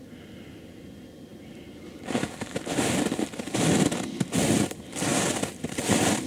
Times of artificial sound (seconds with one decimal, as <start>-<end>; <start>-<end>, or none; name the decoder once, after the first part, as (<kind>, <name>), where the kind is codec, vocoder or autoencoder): none